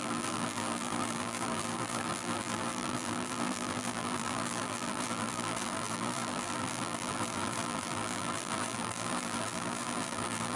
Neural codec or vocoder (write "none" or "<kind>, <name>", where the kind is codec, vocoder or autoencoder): vocoder, BigVGAN v2